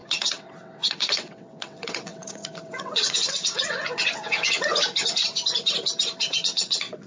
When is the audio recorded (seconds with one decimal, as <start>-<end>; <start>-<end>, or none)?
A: 4.7-6.3